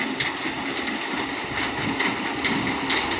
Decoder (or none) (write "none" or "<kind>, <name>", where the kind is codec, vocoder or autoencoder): none